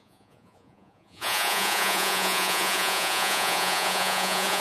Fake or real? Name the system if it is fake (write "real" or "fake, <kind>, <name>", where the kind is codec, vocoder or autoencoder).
fake, vocoder, Vocos